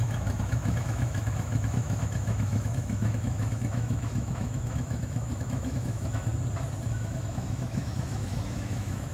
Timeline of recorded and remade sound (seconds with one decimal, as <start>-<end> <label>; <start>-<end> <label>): 0.0-6.3 remade; 6.3-6.9 recorded; 6.9-9.1 remade